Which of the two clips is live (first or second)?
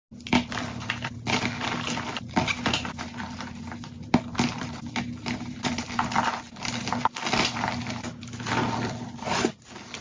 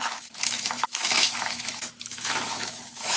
first